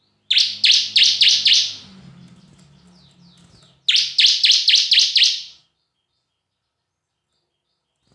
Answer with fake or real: real